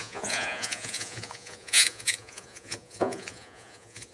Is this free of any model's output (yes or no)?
no